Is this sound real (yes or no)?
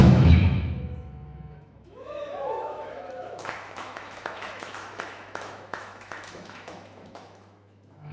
no